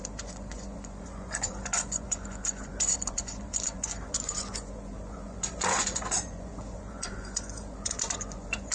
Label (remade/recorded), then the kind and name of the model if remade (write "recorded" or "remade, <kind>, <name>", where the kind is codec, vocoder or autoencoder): remade, vocoder, Vocos